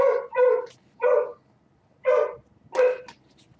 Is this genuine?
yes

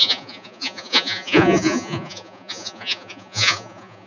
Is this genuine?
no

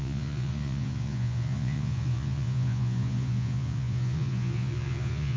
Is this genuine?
no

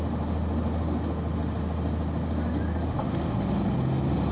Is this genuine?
yes